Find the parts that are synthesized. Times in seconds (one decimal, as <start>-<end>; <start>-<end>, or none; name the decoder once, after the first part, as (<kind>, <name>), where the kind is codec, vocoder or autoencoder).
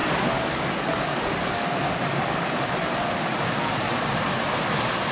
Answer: 0.0-2.5 (codec, DAC)